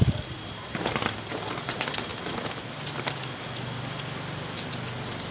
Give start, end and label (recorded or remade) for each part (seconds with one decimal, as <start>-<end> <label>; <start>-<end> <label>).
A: 0.0-5.3 recorded